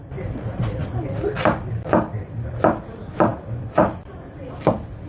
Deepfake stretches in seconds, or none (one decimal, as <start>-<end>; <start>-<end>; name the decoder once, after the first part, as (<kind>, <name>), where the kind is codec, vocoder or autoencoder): none